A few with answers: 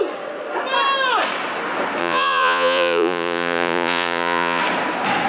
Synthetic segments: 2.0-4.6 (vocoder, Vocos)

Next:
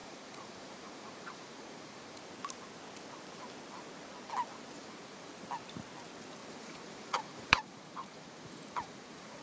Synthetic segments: 0.0-2.2 (vocoder, Vocos); 4.8-5.3; 6.4-9.4

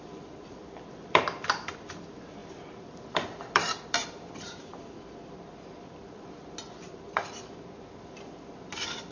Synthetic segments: 0.0-9.1 (vocoder, BigVGAN v2)

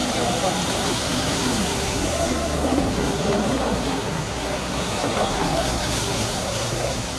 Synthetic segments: 0.7-7.2 (codec, SNAC)

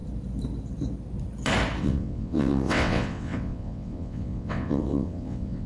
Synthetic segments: 1.8-5.7 (vocoder, WaveNeXt)